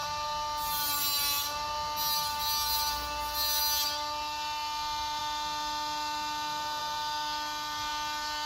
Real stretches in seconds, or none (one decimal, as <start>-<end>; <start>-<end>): 0.0-8.5